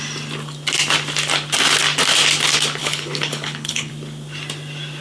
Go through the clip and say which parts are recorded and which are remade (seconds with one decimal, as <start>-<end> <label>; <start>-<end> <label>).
0.0-2.8 recorded; 2.8-3.9 remade; 3.9-5.0 recorded